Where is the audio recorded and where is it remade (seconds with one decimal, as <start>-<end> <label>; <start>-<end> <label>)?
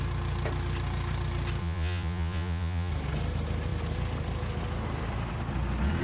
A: 0.0-1.6 recorded; 1.6-2.9 remade; 2.9-6.0 recorded